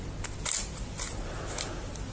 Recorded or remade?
recorded